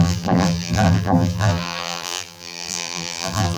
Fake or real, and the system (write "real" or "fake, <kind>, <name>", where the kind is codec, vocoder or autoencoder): fake, vocoder, BigVGAN v2